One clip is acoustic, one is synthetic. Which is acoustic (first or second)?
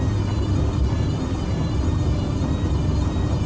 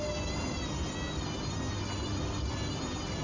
second